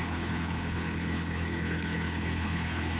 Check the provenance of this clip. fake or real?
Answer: fake